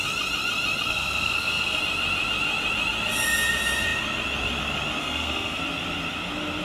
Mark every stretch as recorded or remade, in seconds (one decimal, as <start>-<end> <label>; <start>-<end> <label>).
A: 0.0-0.9 recorded; 0.9-1.8 remade; 1.8-5.0 recorded; 5.0-5.6 remade; 5.6-6.6 recorded